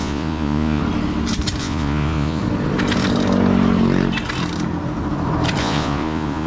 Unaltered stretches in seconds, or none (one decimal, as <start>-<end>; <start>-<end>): 0.8-1.6; 2.4-5.6